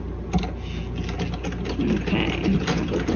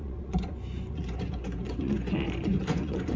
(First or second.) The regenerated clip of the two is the second